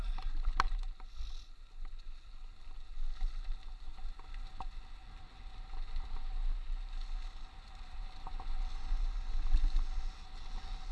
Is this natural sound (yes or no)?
yes